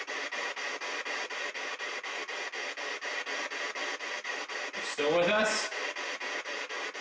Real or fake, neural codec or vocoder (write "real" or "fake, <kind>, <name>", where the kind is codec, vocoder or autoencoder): real